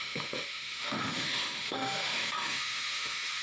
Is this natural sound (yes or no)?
no